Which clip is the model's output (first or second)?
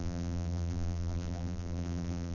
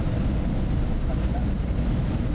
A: first